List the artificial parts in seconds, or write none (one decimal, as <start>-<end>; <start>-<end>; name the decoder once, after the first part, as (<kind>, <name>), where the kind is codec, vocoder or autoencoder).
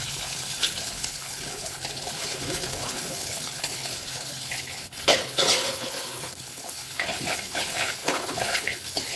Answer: 0.0-9.2 (codec, HILCodec)